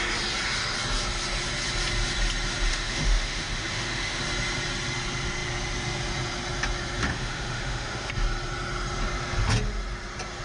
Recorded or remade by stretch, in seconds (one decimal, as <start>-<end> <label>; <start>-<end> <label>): 0.0-2.7 recorded; 2.7-4.2 remade; 4.2-7.0 recorded; 7.0-8.1 remade; 8.1-10.4 recorded